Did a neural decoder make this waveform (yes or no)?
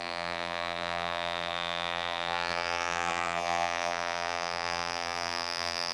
yes